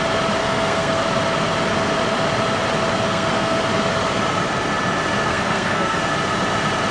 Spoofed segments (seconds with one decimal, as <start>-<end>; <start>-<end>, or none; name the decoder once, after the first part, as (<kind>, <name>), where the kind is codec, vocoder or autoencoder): 0.4-1.0 (codec, SNAC); 3.1-3.6; 5.3-6.0